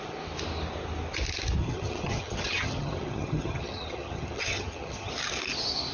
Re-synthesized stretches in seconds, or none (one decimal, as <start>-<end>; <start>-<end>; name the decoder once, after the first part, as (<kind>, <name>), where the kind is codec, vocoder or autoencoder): 1.6-5.1 (vocoder, HiFi-GAN)